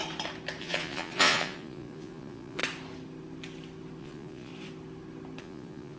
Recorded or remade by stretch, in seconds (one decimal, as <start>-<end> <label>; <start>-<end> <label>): 0.0-0.6 recorded; 0.6-2.6 remade; 2.6-4.0 recorded; 4.0-4.5 remade; 4.5-5.4 recorded; 5.4-6.0 remade